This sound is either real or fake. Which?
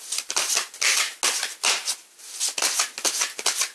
real